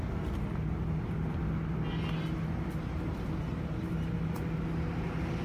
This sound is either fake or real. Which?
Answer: real